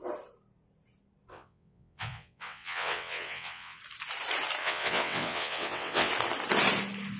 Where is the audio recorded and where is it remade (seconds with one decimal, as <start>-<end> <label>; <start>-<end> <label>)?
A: 0.0-1.3 recorded; 1.3-3.8 remade; 3.8-4.6 recorded; 4.6-6.1 remade; 6.1-7.2 recorded